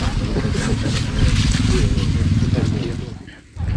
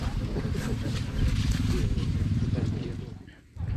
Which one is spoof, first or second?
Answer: second